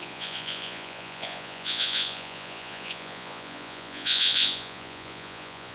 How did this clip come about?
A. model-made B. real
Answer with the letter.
A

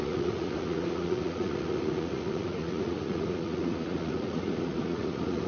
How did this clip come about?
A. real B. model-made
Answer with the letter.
B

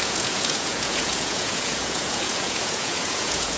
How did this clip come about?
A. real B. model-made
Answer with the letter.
B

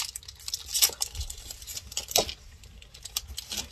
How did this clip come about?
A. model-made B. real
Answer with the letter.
B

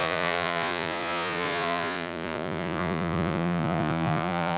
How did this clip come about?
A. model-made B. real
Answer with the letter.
A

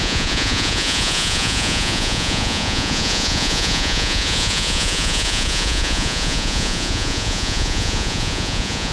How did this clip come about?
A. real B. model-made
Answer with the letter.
B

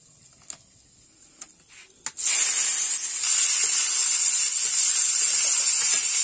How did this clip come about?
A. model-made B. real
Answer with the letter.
B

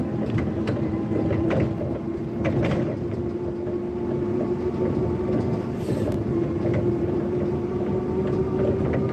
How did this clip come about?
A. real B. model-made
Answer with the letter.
A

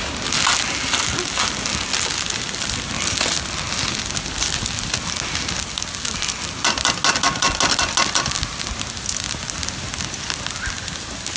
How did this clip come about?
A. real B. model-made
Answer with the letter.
A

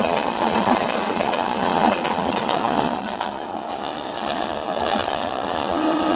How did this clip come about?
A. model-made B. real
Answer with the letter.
A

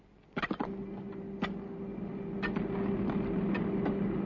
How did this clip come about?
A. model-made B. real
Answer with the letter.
B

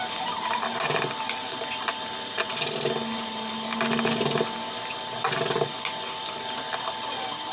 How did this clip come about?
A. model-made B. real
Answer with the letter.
B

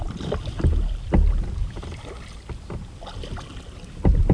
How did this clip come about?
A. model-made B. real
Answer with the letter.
B